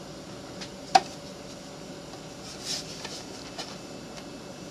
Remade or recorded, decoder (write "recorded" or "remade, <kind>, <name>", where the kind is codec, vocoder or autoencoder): recorded